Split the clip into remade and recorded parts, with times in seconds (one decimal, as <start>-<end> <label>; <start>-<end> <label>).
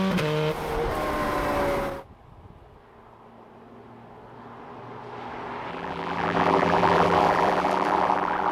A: 0.0-5.7 recorded; 5.7-8.5 remade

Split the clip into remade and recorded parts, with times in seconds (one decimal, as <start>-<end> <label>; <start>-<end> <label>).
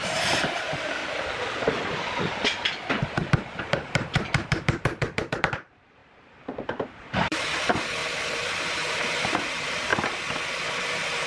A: 0.0-1.0 remade; 1.0-3.6 recorded; 3.6-9.9 remade; 9.9-10.7 recorded; 10.7-11.3 remade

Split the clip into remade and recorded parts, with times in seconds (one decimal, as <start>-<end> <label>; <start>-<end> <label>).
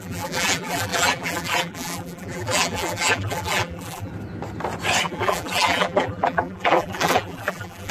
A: 0.0-4.1 remade; 4.1-5.0 recorded; 5.0-7.9 remade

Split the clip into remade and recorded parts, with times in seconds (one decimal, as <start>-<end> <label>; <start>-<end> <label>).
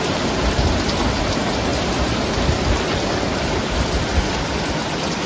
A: 0.0-5.3 recorded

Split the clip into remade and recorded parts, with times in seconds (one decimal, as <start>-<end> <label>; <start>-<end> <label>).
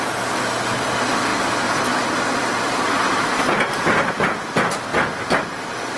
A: 0.0-1.3 recorded; 1.3-4.1 remade; 4.1-4.9 recorded; 4.9-6.0 remade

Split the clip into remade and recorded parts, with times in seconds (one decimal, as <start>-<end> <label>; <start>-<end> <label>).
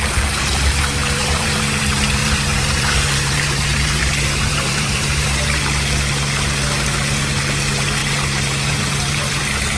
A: 0.0-1.0 recorded; 1.0-1.8 remade; 1.8-2.2 recorded; 2.2-5.6 remade; 5.6-8.0 recorded; 8.0-9.4 remade; 9.4-9.8 recorded